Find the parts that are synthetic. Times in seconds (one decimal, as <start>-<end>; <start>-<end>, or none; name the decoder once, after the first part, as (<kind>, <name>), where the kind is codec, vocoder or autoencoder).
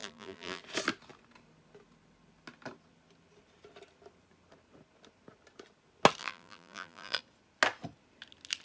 0.0-0.6 (vocoder, BigVGAN v2); 6.2-7.2